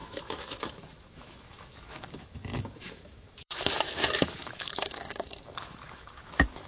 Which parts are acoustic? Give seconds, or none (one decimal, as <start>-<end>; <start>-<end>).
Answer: none